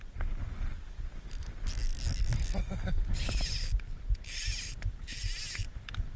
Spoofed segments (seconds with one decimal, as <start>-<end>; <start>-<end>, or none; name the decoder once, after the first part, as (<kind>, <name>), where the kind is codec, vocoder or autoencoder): none